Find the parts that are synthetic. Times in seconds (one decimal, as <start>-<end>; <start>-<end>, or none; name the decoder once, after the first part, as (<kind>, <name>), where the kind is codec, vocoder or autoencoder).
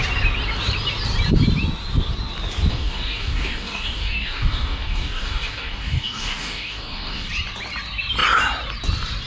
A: 2.7-7.3 (codec, DAC)